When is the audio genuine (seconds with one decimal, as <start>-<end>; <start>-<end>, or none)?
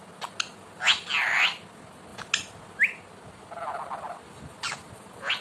0.0-5.4